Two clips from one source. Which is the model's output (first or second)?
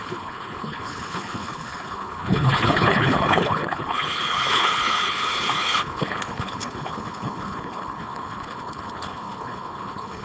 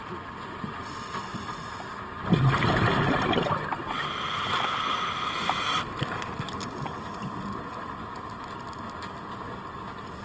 first